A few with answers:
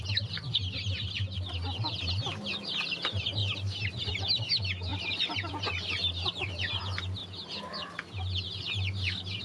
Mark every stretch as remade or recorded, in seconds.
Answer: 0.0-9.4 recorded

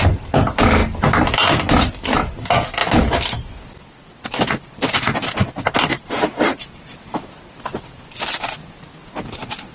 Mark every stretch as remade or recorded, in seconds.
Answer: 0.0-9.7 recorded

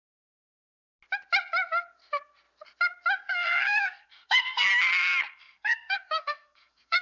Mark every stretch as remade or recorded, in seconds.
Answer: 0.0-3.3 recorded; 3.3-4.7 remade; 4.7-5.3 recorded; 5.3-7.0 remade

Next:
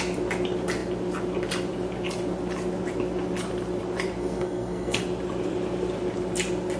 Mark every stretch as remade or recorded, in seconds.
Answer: 0.0-4.2 recorded; 4.2-5.0 remade; 5.0-6.8 recorded